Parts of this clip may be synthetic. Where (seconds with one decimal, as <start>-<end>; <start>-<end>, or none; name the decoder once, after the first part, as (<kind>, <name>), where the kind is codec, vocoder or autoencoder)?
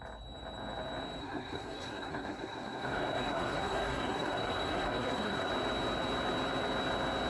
1.2-5.5 (codec, SNAC)